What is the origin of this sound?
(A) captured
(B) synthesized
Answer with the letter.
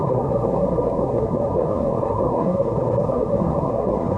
B